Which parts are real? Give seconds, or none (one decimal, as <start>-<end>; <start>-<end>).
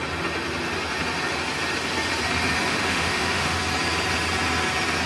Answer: 0.0-2.7; 3.6-5.1